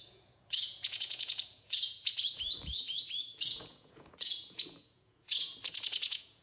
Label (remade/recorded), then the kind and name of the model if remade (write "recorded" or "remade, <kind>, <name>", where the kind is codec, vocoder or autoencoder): remade, vocoder, Vocos